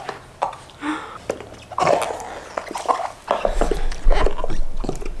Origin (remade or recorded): recorded